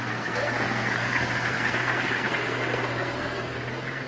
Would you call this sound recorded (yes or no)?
no